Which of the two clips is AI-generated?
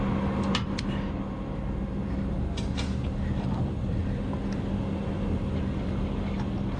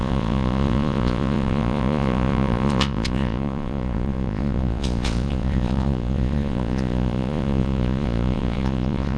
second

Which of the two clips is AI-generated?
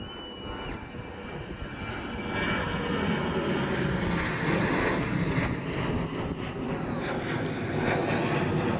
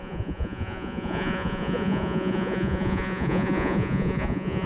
second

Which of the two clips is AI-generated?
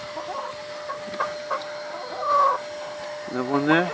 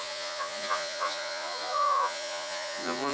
second